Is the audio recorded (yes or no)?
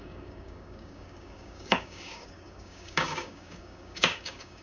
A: no